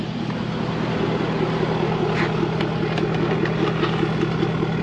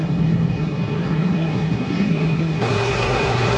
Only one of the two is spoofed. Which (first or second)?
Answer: second